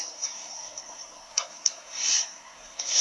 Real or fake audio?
fake